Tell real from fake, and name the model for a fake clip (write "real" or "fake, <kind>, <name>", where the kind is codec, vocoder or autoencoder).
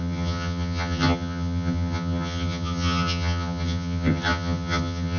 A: fake, vocoder, HiFi-GAN